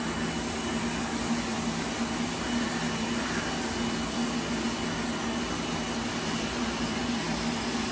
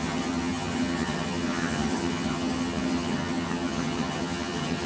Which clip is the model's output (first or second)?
second